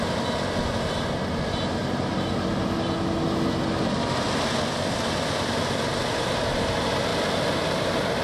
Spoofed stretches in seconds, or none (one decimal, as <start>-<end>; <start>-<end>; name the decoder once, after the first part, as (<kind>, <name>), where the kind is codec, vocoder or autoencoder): none